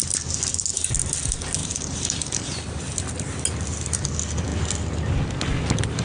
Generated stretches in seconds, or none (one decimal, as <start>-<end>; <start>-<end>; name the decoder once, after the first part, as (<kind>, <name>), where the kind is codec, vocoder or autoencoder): 1.6-2.8 (vocoder, BigVGAN v2)